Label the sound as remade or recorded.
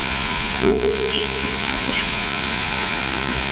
remade